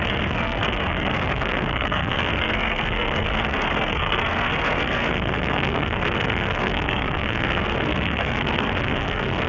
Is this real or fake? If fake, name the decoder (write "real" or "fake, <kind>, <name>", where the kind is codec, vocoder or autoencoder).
fake, codec, SNAC